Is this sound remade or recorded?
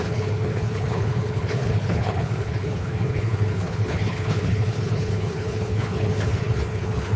remade